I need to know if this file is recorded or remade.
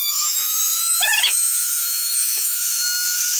remade